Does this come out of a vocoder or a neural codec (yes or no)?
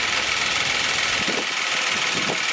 no